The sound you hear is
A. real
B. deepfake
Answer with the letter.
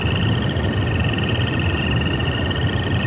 A